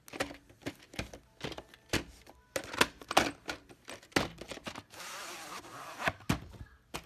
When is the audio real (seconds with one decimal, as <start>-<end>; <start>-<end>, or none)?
0.0-7.1